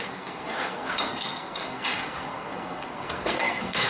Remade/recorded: remade